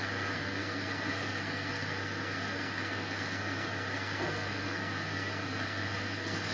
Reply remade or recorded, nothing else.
remade